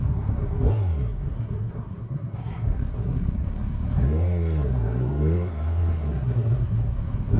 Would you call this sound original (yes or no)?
no